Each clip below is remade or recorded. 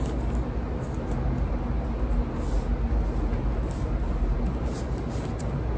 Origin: recorded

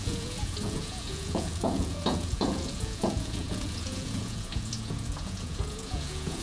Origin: remade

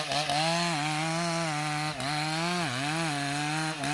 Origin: recorded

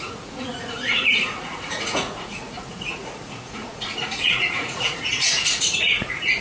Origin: remade